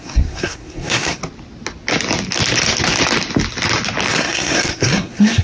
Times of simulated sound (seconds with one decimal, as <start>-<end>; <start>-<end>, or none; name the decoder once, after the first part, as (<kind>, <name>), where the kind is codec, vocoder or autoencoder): 0.0-1.2 (codec, SNAC); 4.1-5.4